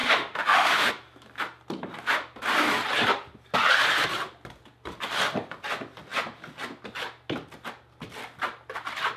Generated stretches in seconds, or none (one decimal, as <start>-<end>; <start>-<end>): 0.0-0.9